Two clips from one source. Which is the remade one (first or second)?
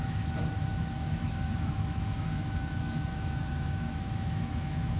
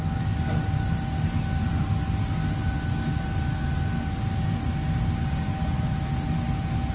first